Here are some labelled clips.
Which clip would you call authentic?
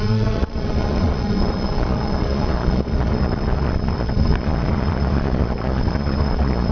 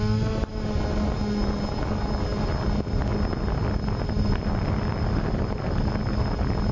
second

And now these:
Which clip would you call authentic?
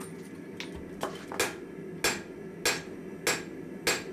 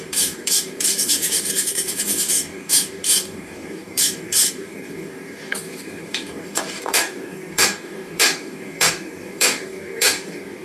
first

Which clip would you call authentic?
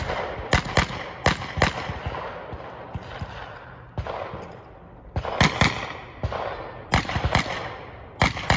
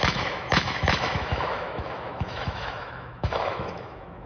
first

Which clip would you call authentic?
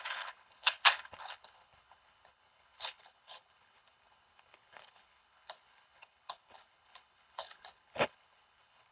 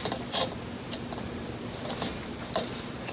second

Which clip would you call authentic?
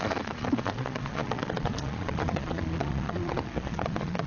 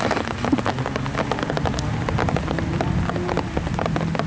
second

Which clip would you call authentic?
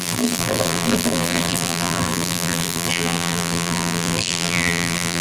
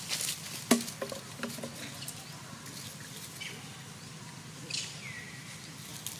second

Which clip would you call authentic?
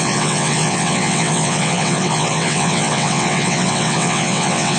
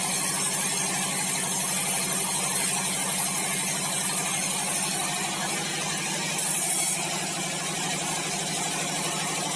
second